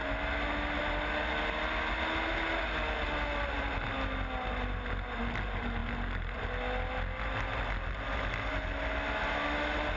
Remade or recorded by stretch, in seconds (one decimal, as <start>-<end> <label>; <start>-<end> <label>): 0.0-10.0 recorded